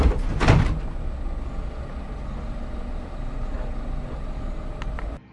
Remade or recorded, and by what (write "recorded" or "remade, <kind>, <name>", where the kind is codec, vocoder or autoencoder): recorded